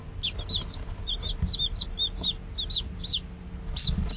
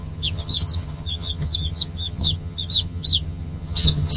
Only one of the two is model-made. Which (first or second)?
second